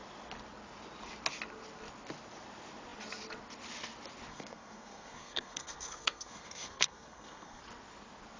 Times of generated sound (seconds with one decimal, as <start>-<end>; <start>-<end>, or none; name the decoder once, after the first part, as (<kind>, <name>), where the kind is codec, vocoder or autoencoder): 4.3-7.6 (codec, SNAC)